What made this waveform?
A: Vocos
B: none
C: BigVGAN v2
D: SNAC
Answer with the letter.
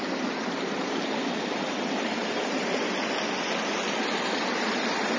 C